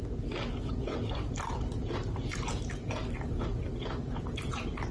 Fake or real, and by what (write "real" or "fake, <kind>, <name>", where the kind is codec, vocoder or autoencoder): real